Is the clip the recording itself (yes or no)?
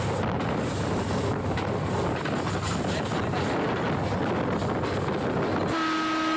yes